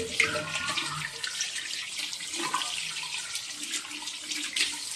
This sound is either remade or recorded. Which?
recorded